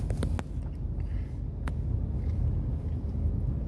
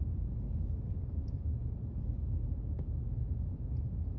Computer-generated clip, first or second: second